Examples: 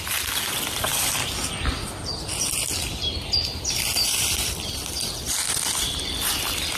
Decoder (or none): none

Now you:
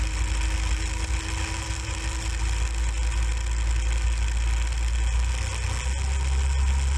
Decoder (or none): none